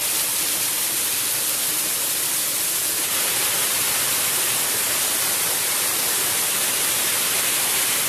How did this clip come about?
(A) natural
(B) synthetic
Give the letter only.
A